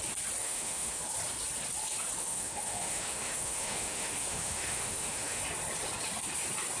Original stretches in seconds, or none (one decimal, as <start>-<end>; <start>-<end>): 0.0-0.4; 1.0-2.2; 5.4-6.8